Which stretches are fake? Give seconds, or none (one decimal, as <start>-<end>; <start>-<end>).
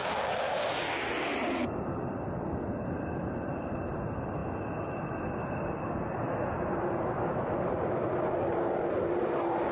none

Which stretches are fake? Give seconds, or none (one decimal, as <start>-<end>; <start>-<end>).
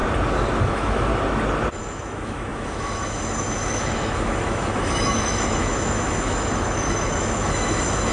0.6-1.1; 1.8-8.1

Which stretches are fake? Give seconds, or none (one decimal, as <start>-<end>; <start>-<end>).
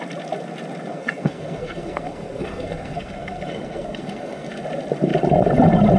0.9-4.5